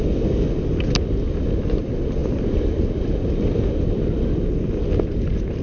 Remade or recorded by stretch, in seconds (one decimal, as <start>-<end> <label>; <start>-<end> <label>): 0.0-5.6 recorded

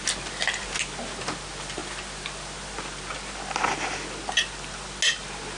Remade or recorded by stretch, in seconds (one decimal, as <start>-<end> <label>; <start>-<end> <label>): 0.0-5.6 recorded

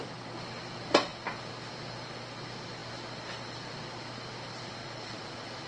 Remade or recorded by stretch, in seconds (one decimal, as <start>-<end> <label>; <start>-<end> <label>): 0.0-4.8 recorded; 4.8-5.7 remade

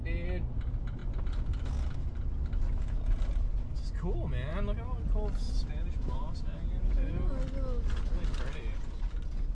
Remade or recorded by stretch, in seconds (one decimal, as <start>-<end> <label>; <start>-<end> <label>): 0.0-9.5 recorded